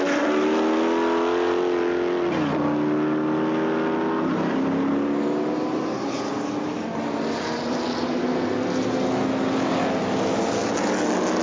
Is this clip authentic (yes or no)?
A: yes